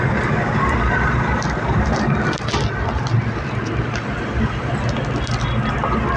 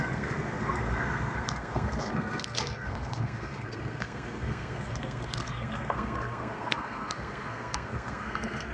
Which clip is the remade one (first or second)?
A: second